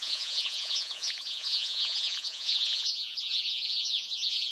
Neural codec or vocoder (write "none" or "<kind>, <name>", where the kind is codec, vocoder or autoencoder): vocoder, Vocos